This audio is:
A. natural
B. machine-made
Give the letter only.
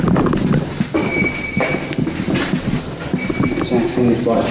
A